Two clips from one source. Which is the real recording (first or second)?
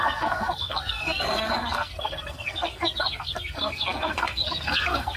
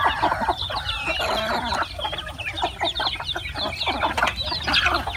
second